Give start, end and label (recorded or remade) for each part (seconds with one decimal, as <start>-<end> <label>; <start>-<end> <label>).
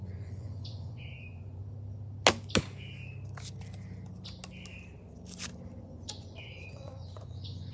0.0-1.6 remade; 1.6-5.8 recorded; 5.8-7.7 remade